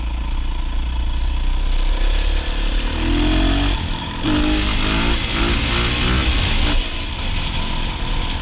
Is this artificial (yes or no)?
no